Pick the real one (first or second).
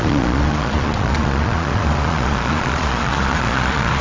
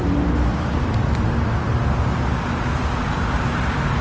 second